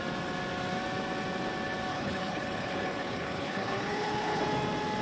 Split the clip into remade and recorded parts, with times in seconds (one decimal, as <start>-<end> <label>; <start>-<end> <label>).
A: 0.0-1.9 recorded; 1.9-4.4 remade; 4.4-5.0 recorded